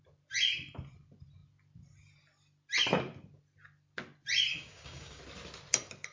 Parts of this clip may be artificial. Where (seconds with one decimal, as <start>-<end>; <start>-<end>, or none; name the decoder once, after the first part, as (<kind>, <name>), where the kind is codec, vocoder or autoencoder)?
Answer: 4.5-5.2 (codec, DAC)